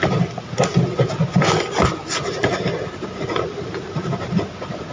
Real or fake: real